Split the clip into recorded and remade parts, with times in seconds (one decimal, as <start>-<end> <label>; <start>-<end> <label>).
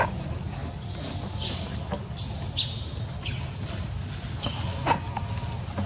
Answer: 0.0-5.9 recorded